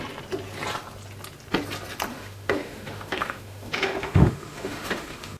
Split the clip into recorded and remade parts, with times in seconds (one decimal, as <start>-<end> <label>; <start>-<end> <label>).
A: 0.0-2.1 recorded; 2.1-5.4 remade